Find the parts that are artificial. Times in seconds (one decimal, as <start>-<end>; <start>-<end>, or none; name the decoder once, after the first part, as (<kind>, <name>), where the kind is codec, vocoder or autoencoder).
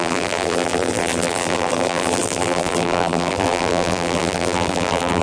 0.0-5.2 (vocoder, BigVGAN v2)